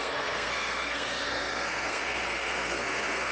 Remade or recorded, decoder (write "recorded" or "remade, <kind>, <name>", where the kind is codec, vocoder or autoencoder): remade, codec, SNAC